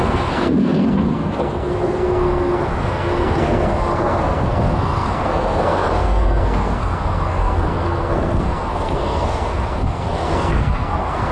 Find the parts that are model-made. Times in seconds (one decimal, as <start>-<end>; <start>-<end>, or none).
0.0-11.3